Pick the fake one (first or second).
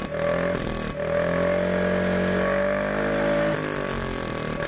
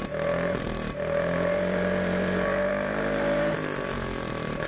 second